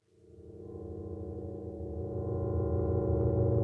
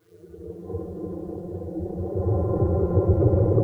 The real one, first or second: first